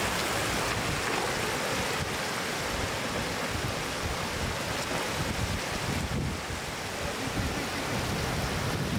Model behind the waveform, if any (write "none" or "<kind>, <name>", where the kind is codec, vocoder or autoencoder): none